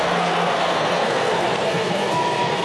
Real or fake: fake